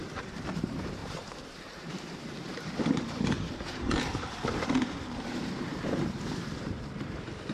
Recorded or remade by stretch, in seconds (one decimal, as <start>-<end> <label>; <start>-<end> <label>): 0.0-7.5 remade